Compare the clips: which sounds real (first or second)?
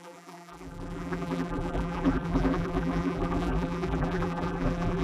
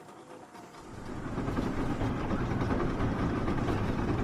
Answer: second